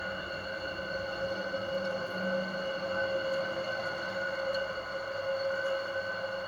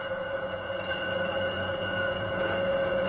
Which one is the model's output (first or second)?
second